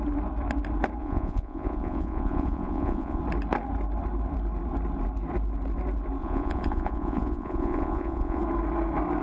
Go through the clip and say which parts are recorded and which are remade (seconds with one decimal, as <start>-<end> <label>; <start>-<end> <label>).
0.0-1.0 recorded; 1.0-3.2 remade; 3.2-6.2 recorded; 6.2-8.4 remade; 8.4-9.2 recorded